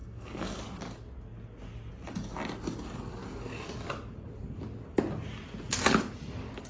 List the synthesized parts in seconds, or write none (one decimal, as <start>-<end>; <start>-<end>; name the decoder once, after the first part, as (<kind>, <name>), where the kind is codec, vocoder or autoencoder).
0.0-0.6 (codec, SNAC)